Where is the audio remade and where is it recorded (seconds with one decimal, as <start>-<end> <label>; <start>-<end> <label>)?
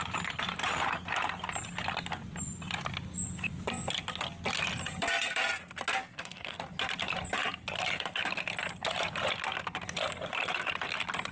0.0-6.0 recorded; 6.0-6.6 remade; 6.6-11.3 recorded